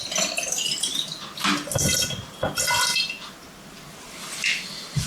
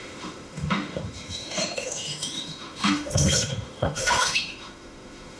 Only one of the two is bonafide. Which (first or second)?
first